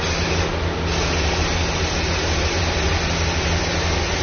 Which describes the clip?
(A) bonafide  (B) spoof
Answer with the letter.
A